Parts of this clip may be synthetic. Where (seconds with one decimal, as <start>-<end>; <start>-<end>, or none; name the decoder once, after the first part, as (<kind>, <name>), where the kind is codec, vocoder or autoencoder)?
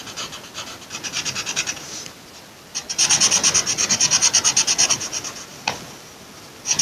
none